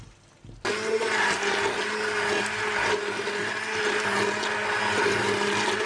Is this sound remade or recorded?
recorded